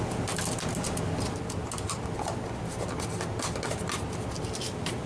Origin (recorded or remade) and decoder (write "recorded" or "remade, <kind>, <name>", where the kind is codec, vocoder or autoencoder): recorded